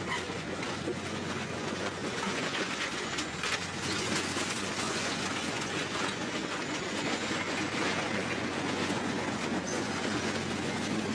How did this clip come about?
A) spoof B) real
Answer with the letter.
A